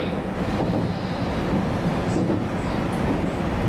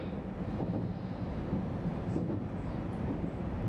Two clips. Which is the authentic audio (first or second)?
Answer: first